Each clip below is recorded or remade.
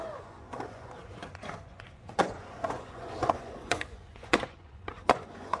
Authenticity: remade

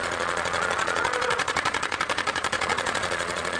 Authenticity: remade